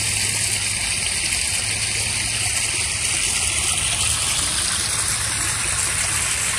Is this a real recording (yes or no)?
yes